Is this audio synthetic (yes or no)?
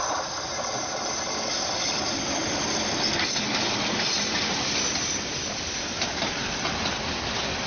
yes